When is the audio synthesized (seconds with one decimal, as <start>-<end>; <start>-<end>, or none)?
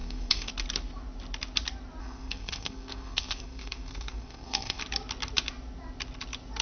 0.0-0.5; 2.0-4.8